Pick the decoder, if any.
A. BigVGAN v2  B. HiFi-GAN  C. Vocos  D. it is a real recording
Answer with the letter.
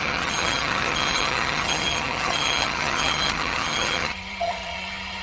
B